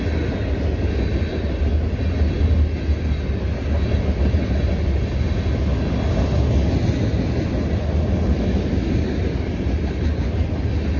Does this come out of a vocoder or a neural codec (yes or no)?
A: no